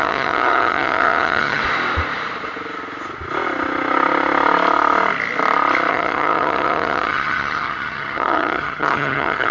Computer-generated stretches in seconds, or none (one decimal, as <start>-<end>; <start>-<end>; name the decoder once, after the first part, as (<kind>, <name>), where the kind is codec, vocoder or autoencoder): 0.0-1.6 (vocoder, HiFi-GAN); 5.9-9.5